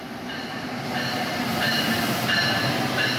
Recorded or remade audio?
remade